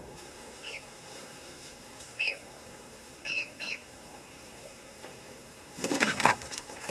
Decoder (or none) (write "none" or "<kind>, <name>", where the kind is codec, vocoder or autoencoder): codec, SNAC